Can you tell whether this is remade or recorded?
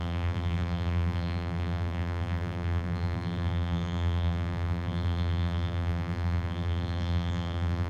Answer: remade